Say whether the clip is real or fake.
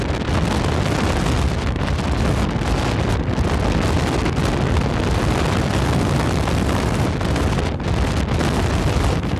real